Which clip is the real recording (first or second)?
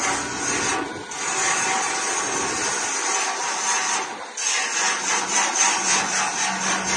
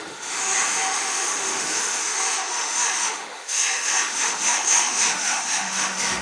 first